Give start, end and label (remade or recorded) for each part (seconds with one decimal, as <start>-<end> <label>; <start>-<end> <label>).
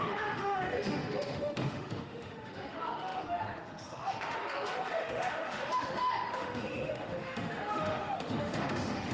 0.0-9.1 remade